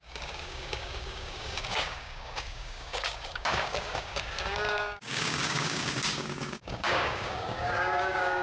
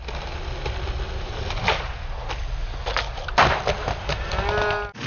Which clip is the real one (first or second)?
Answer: second